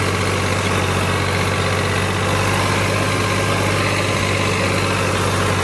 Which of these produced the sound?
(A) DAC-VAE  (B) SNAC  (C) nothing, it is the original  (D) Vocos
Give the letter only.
C